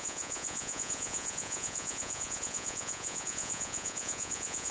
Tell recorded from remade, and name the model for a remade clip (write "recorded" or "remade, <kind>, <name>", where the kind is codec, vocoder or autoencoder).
remade, vocoder, Vocos